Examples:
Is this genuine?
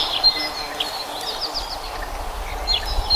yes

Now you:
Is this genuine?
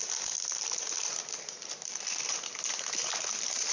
yes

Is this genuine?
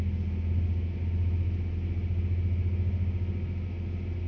yes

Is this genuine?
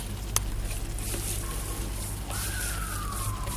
yes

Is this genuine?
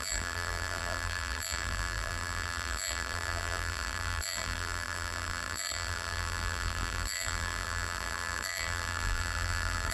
no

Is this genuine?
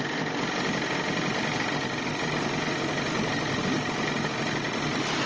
yes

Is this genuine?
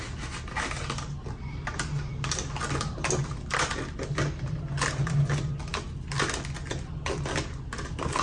yes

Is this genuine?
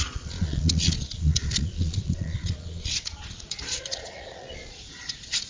no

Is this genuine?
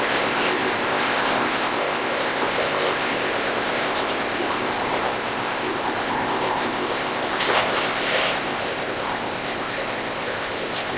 no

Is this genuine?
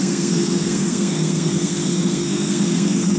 no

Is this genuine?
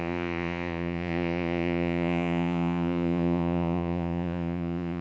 no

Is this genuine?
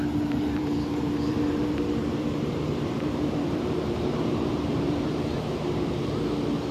no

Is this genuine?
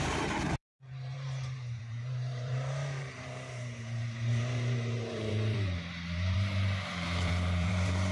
no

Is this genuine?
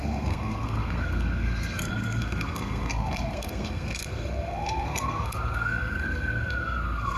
no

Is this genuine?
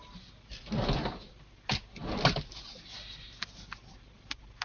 yes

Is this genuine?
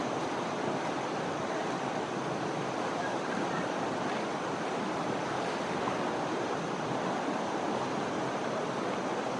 yes